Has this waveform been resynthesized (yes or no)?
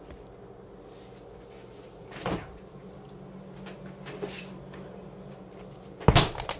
no